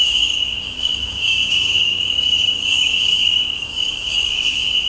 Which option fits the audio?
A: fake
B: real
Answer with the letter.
A